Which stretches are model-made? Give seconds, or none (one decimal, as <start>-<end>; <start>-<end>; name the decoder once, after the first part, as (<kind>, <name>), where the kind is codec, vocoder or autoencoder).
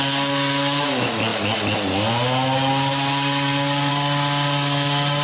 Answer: none